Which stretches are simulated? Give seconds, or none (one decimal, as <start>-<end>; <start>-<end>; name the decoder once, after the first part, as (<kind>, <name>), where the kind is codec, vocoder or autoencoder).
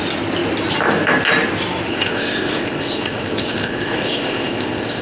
1.9-5.0 (codec, ZipCodec)